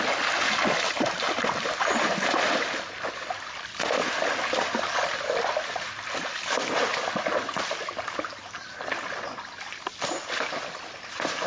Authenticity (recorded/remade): recorded